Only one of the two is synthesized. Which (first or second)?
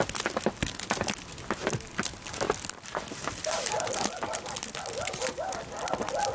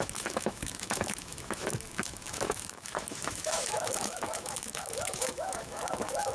second